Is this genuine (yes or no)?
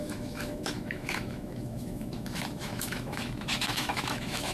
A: no